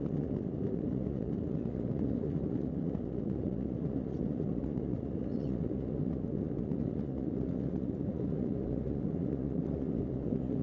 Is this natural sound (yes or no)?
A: no